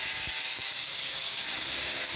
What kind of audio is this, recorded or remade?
remade